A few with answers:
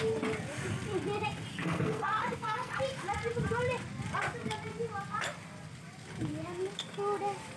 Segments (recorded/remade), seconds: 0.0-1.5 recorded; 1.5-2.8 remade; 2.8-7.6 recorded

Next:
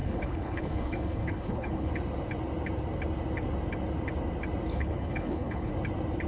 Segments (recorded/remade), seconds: 0.0-1.9 remade; 1.9-4.7 recorded; 4.7-5.7 remade; 5.7-6.3 recorded